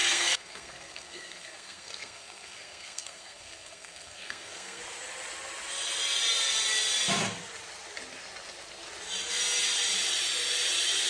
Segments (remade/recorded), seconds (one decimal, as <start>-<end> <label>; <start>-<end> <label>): 0.0-4.8 remade; 4.8-11.1 recorded